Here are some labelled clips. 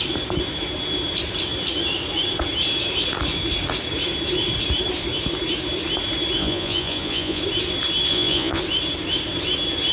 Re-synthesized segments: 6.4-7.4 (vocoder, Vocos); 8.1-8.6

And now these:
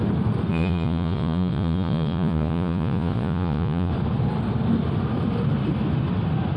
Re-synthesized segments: 0.5-3.9 (vocoder, Vocos)

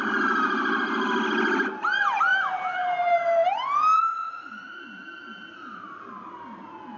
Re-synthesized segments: 4.1-4.8 (vocoder, Vocos)

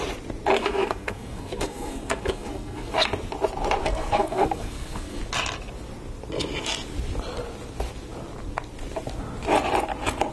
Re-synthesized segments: 0.6-2.9 (codec, SNAC); 3.8-5.2

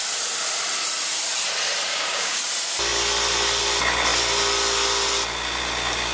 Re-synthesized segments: 1.9-2.4 (codec, DAC)

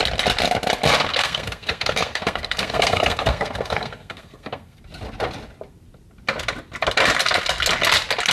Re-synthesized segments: 1.1-4.8 (codec, SNAC)

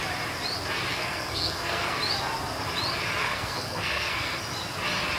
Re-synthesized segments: 0.9-2.0 (codec, SNAC); 3.2-4.4

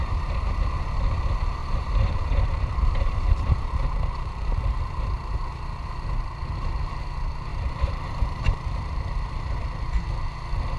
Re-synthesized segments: 1.6-5.5 (vocoder, BigVGAN v2); 7.5-9.0